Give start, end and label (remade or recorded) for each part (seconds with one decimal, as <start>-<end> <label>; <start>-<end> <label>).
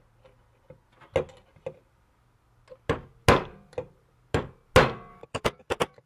0.0-5.1 recorded; 5.1-6.1 remade